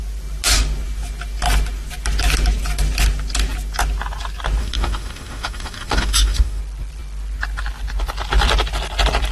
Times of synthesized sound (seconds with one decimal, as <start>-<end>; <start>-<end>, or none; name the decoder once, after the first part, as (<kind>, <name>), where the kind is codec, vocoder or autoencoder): 4.6-6.6 (autoencoder, DAC-VAE)